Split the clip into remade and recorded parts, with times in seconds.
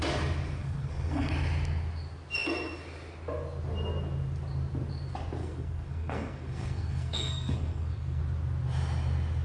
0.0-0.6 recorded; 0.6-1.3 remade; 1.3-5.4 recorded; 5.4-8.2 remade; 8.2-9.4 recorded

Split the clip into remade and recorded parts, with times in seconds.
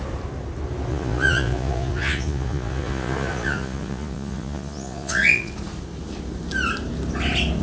0.0-0.9 recorded; 0.9-5.5 remade; 5.5-7.6 recorded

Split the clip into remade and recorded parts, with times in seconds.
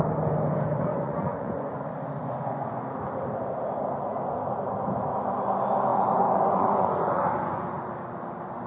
0.0-0.9 recorded; 0.9-1.8 remade; 1.8-2.2 recorded; 2.2-2.8 remade; 2.8-5.9 recorded; 5.9-7.9 remade; 7.9-8.7 recorded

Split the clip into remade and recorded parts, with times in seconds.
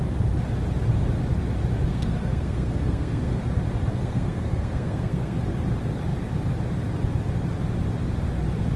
0.0-1.9 recorded; 1.9-3.4 remade; 3.4-3.9 recorded; 3.9-5.4 remade; 5.4-8.8 recorded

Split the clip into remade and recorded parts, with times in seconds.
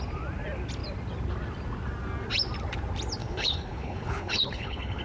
0.0-3.2 recorded; 3.2-5.0 remade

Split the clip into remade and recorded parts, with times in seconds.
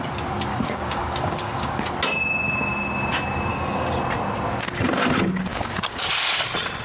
0.0-0.5 recorded; 0.5-1.9 remade; 1.9-3.5 recorded; 3.5-4.0 remade; 4.0-5.5 recorded; 5.5-6.1 remade; 6.1-6.8 recorded